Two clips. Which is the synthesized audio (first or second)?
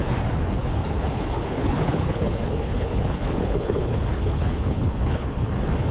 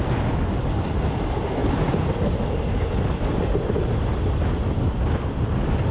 first